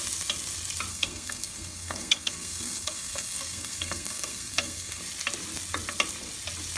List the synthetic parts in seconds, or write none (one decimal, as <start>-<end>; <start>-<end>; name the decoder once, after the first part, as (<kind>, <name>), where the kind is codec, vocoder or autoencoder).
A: 0.9-5.0 (codec, SNAC)